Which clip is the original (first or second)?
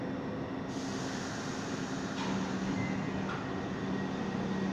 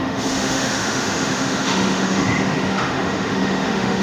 first